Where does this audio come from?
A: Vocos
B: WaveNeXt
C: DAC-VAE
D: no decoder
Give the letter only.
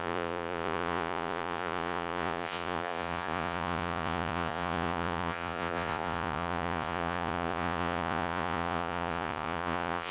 A